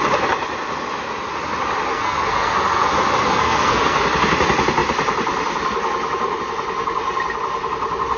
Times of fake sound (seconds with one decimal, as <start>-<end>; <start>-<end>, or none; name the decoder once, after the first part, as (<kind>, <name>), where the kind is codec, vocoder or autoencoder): 1.9-2.9 (codec, SNAC); 3.3-4.0